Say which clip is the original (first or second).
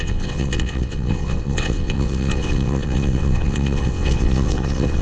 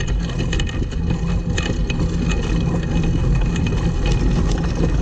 second